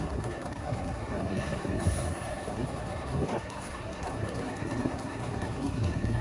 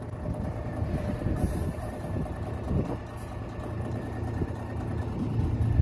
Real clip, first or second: second